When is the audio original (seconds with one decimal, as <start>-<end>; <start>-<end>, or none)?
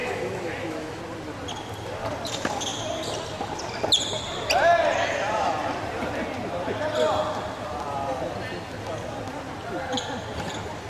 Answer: 1.0-10.9